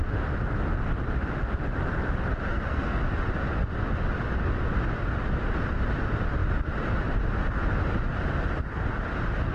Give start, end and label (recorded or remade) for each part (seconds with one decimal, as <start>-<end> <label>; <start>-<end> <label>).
0.0-2.5 recorded; 2.5-3.0 remade; 3.0-9.5 recorded